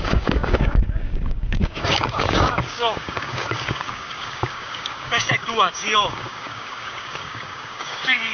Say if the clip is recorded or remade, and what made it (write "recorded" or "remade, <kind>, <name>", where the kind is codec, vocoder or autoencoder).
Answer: remade, codec, DAC